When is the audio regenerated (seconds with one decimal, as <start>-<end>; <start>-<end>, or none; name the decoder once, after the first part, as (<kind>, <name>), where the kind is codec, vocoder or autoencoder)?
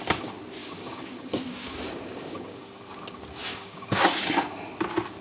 0.6-2.8 (codec, DAC); 3.4-4.3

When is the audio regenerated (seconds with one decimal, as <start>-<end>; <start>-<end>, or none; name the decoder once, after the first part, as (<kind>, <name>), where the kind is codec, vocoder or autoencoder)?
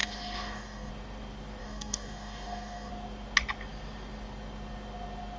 0.0-0.9 (codec, DAC); 1.6-2.9